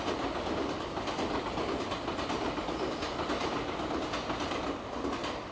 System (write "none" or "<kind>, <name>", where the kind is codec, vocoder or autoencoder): none